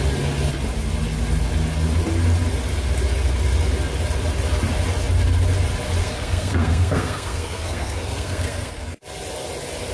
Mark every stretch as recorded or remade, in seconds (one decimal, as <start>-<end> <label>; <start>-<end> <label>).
0.0-6.0 recorded; 6.0-9.0 remade; 9.0-9.9 recorded